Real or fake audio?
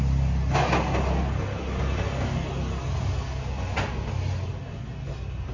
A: real